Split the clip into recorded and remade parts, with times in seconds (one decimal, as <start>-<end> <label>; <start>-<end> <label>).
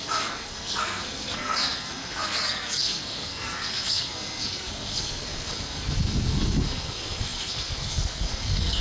0.0-8.8 remade